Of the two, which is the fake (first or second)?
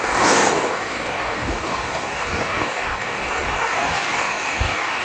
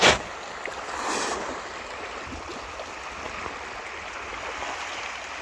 first